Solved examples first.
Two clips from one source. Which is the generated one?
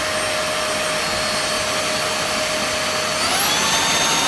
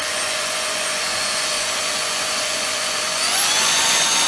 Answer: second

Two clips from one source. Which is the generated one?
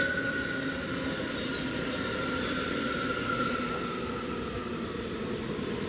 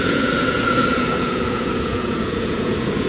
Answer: second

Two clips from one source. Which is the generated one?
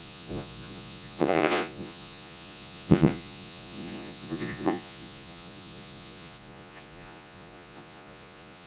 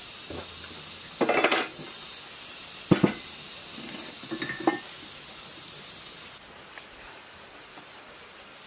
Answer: first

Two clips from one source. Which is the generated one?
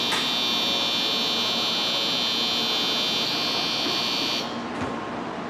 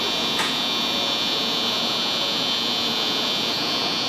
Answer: second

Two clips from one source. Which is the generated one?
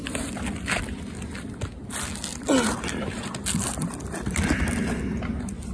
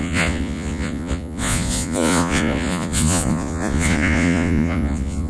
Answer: second